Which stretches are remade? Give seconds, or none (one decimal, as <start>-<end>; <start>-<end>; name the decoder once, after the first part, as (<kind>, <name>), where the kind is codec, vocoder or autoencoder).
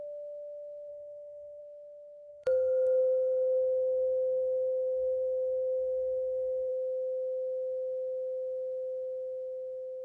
0.9-1.6 (codec, SNAC); 2.3-6.7